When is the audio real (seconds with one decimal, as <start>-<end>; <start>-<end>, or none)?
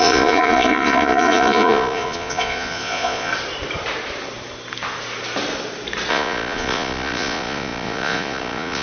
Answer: 3.3-6.1